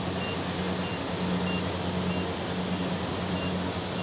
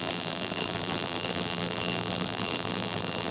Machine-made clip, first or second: second